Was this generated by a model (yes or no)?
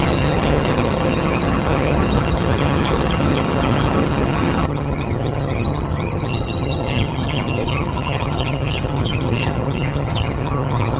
yes